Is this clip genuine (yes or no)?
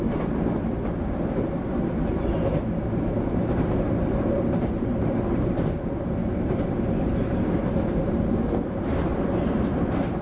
no